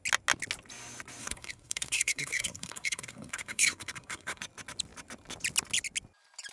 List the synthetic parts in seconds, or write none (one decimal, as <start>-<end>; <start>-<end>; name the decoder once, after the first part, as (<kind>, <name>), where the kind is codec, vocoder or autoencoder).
1.2-4.4 (codec, SNAC)